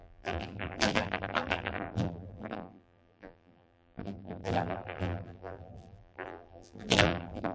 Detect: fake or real fake